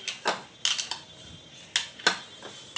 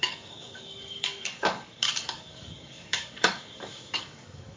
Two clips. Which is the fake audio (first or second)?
second